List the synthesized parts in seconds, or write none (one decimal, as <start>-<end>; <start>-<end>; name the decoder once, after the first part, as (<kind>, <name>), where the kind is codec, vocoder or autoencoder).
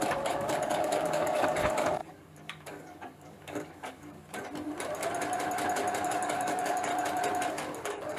0.0-4.2 (codec, DAC); 6.0-6.9; 7.5-8.2